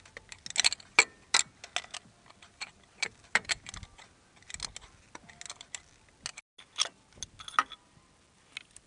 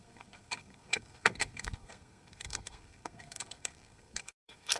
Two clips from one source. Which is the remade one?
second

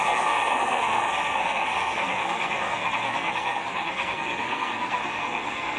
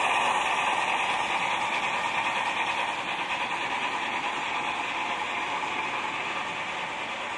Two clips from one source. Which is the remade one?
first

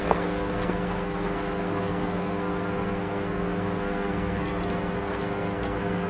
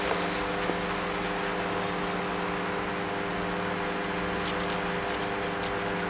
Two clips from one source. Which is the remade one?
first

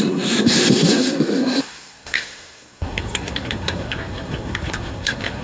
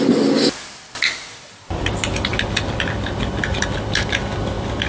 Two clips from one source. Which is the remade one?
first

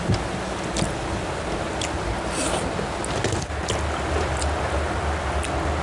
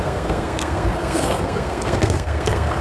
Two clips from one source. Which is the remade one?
second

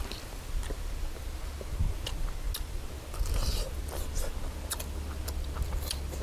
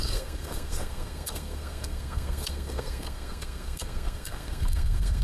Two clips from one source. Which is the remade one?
second